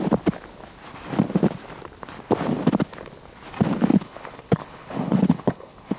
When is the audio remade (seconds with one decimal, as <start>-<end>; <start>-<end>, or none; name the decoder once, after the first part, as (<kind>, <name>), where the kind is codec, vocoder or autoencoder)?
3.9-6.0 (codec, HILCodec)